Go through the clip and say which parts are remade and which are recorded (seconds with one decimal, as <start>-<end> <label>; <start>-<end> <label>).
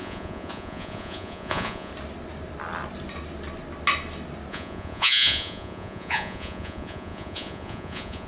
0.0-1.9 remade; 1.9-4.5 recorded; 4.5-8.3 remade